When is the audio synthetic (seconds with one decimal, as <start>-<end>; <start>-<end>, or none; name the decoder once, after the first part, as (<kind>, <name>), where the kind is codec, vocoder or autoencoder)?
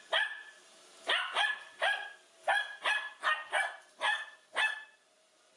none